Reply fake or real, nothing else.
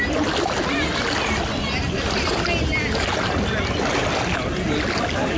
real